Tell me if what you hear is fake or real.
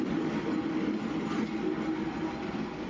real